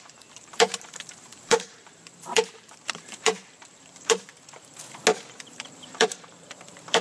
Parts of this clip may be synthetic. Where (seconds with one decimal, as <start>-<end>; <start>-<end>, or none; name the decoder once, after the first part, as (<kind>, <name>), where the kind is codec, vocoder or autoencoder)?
0.0-4.3 (vocoder, BigVGAN v2); 5.4-7.0